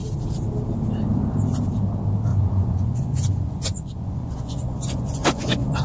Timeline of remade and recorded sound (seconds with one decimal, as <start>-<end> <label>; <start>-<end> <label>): 0.0-2.3 recorded; 2.3-5.8 remade